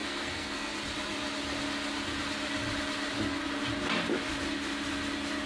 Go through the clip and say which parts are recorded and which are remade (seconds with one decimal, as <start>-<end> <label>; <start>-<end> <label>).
0.0-0.7 remade; 0.7-5.5 recorded